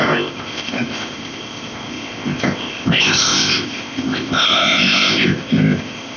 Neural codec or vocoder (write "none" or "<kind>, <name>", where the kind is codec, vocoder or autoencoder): codec, ZipCodec